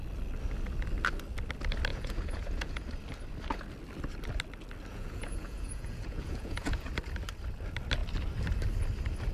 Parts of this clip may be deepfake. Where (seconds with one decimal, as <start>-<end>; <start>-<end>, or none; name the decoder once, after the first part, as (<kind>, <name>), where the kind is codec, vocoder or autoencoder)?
1.9-2.8 (vocoder, Vocos); 4.9-6.9